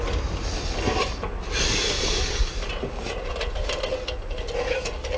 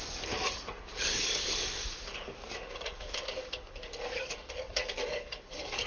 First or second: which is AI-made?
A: second